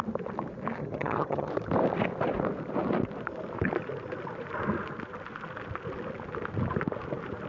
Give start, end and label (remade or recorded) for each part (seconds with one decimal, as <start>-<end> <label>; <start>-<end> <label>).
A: 0.0-0.8 recorded; 0.8-1.5 remade; 1.5-7.5 recorded